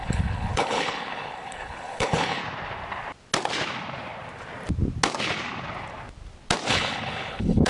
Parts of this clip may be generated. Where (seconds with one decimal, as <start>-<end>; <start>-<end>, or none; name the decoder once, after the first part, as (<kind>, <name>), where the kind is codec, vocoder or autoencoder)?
0.0-2.4 (codec, HILCodec); 6.7-7.7